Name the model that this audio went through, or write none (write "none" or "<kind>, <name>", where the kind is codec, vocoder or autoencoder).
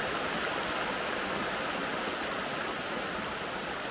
none